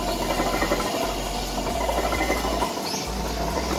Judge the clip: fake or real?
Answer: real